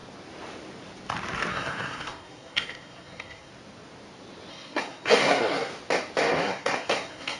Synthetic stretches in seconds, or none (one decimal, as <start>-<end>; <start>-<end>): 1.5-3.5; 4.5-5.7; 6.4-7.4